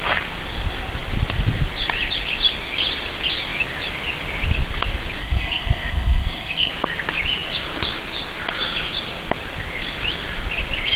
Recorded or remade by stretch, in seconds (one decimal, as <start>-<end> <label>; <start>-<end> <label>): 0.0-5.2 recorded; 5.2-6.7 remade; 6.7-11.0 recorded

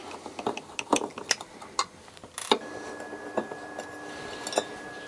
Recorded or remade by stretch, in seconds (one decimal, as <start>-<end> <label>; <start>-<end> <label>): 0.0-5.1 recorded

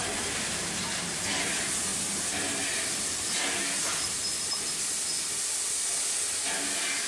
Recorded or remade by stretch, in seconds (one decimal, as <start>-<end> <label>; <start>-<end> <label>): 0.0-7.1 recorded

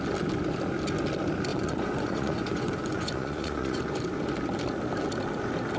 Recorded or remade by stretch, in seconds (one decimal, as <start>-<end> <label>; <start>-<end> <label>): 0.0-1.5 recorded; 1.5-3.8 remade; 3.8-5.8 recorded

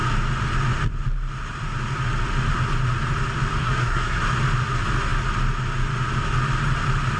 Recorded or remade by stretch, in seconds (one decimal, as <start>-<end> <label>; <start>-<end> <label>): 0.0-3.6 recorded; 3.6-4.2 remade; 4.2-7.2 recorded

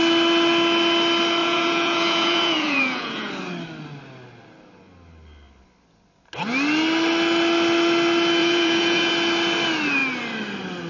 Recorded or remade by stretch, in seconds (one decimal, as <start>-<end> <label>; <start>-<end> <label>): 0.0-1.4 recorded; 1.4-3.3 remade; 3.3-8.4 recorded; 8.4-9.1 remade; 9.1-10.9 recorded

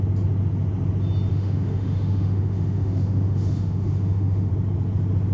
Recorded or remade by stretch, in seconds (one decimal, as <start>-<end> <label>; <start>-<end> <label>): 0.0-1.3 recorded; 1.3-4.5 remade; 4.5-5.3 recorded